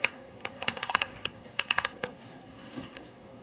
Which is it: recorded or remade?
remade